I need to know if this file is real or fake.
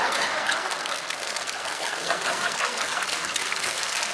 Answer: fake